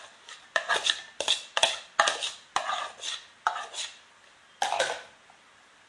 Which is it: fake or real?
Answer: real